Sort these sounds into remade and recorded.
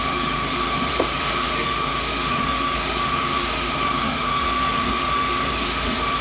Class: remade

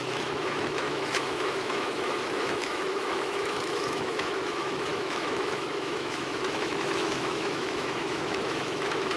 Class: remade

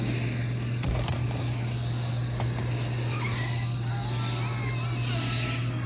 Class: recorded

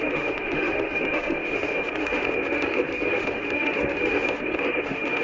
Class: remade